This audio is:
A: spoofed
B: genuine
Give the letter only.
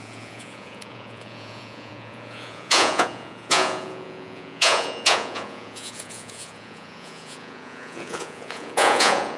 A